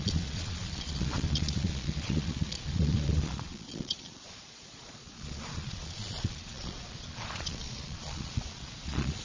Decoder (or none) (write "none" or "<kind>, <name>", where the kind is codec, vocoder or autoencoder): vocoder, Vocos